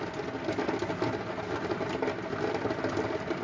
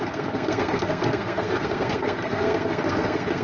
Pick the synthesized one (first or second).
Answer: second